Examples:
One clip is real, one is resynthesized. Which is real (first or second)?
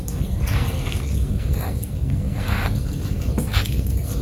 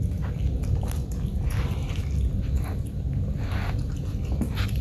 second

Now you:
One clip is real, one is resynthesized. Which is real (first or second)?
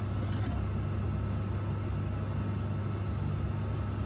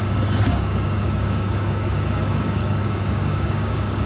first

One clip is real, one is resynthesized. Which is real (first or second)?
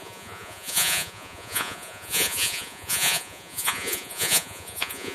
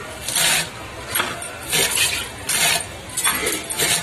second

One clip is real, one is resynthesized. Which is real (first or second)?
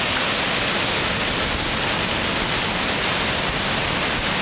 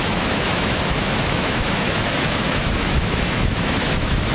first